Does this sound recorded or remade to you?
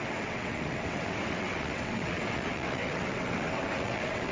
remade